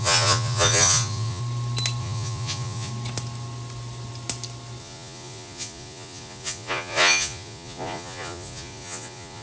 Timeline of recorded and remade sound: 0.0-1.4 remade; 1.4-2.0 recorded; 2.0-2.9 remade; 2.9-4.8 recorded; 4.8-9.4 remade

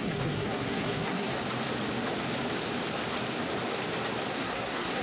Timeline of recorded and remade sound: 0.0-1.3 remade; 1.3-4.3 recorded; 4.3-5.0 remade

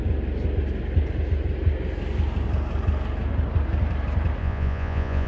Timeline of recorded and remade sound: 0.0-4.4 recorded; 4.4-5.3 remade